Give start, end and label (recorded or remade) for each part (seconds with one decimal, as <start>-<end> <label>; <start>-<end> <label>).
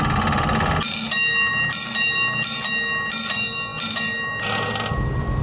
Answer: 0.0-5.4 recorded